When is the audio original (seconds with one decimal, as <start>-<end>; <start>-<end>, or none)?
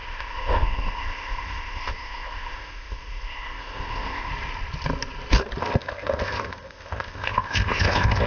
4.3-5.6